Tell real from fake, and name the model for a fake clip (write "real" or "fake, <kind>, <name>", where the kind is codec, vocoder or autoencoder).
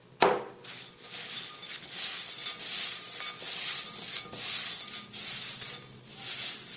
real